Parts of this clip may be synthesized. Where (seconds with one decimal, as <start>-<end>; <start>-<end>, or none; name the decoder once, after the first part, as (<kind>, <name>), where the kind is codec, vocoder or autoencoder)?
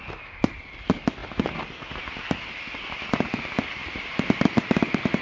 3.8-4.6 (vocoder, BigVGAN v2)